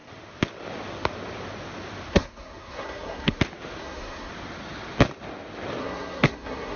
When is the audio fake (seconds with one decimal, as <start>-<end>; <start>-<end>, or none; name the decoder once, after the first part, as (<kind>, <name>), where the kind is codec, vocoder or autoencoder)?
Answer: 2.1-3.4 (codec, SNAC); 3.8-4.3; 5.8-6.8